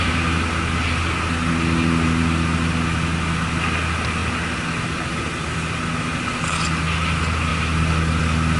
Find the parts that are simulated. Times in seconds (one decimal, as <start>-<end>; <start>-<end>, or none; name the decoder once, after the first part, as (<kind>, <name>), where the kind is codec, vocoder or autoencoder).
none